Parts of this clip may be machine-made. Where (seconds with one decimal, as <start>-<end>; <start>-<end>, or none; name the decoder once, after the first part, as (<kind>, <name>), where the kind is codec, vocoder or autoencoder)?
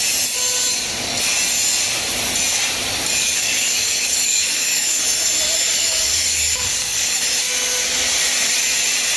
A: 3.2-5.0 (codec, DAC); 5.8-7.2